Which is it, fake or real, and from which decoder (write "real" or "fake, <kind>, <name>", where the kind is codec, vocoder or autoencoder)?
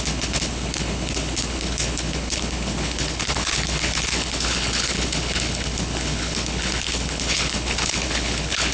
fake, codec, HILCodec